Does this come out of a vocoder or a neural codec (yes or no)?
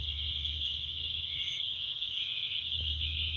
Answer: yes